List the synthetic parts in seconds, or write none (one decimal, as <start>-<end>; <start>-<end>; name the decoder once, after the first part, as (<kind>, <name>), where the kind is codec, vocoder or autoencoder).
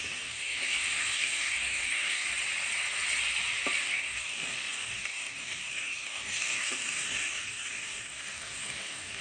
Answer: 0.0-2.3 (codec, DAC); 3.8-9.2